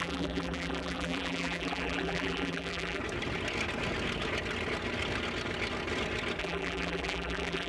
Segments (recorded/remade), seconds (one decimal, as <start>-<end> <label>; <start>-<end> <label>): 0.0-3.0 remade; 3.0-6.4 recorded; 6.4-7.7 remade